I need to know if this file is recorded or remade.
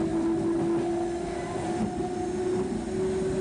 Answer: recorded